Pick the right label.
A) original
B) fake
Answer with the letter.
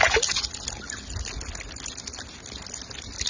A